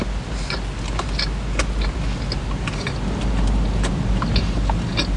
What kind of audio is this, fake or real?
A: real